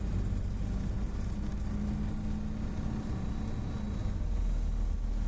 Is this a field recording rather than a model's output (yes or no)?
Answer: yes